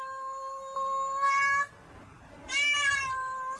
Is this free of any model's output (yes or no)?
yes